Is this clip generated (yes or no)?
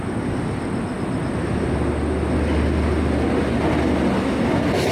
no